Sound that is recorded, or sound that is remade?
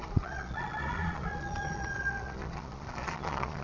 remade